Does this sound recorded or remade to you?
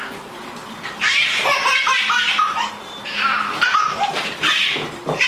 remade